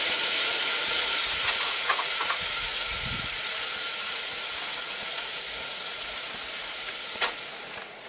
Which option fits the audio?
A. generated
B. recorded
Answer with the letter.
A